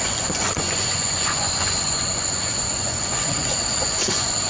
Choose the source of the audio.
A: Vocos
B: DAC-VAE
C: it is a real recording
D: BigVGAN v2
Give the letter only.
A